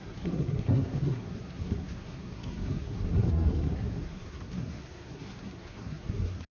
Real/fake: fake